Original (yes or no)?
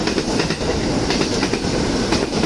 yes